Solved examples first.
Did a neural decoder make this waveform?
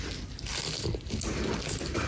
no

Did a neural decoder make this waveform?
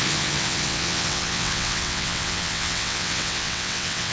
yes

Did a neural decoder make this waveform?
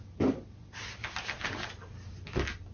no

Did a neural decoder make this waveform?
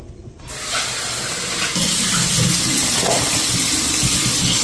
no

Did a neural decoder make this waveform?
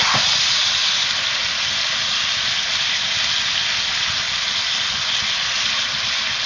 no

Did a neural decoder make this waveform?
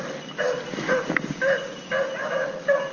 no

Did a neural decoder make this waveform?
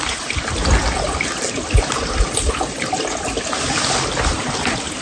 no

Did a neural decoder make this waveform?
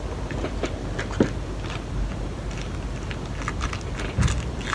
no